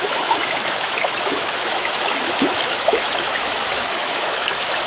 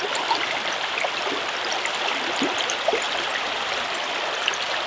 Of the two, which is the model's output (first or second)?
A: first